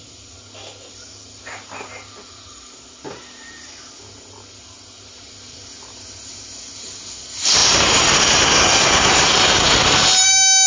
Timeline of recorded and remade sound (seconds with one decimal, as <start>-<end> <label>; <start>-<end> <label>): 0.0-10.7 recorded